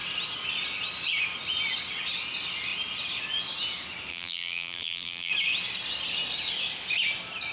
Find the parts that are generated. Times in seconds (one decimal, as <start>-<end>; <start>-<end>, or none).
4.1-5.3